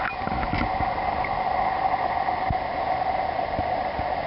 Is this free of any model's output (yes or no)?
yes